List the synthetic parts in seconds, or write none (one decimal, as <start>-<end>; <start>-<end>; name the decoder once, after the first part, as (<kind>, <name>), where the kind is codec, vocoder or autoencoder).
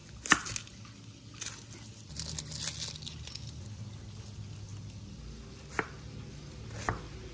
none